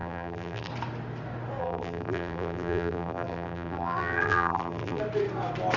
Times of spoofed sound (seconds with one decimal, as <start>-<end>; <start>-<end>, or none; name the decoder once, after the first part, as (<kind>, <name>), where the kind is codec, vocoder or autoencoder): 0.0-0.7 (vocoder, BigVGAN v2); 1.6-5.0